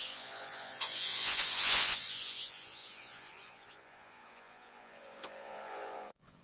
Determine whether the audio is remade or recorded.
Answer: remade